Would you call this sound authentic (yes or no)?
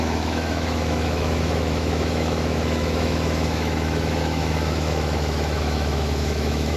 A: no